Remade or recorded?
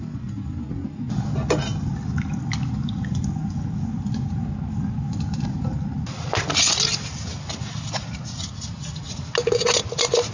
recorded